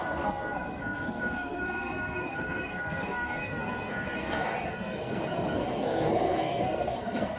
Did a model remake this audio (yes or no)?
yes